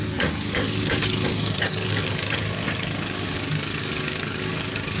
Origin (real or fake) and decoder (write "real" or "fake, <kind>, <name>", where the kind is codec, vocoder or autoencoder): fake, codec, DAC